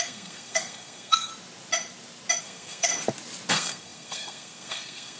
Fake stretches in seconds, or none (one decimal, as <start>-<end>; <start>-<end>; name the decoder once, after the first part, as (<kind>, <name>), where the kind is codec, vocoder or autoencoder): 0.0-1.3 (codec, SNAC); 2.4-2.9; 3.5-5.2